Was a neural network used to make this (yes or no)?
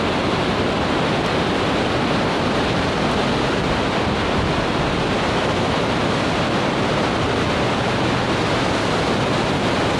no